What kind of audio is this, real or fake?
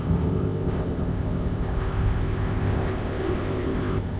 fake